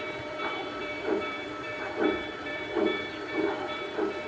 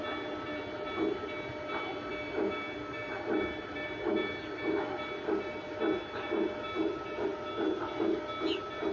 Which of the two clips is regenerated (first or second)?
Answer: first